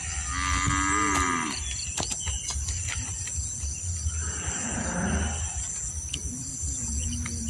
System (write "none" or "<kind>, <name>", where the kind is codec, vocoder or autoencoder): none